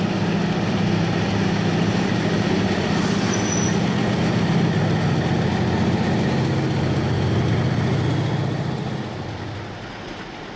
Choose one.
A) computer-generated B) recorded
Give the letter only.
B